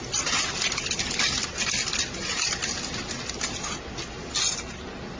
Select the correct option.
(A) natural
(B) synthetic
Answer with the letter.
A